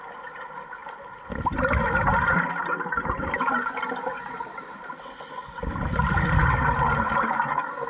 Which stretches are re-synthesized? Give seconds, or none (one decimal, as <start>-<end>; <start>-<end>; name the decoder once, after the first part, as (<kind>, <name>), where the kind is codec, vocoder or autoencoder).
none

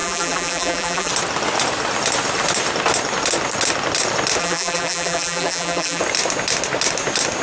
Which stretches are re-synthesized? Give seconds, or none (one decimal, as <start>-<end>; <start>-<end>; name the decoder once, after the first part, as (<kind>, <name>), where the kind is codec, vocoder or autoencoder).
0.0-1.1 (vocoder, BigVGAN v2); 4.4-6.0